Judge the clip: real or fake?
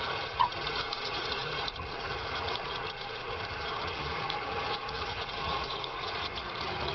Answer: fake